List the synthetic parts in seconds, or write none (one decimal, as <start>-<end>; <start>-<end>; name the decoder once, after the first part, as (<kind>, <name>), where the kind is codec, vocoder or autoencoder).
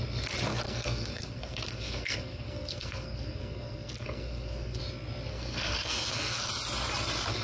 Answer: 0.5-4.8 (codec, SNAC); 5.3-6.5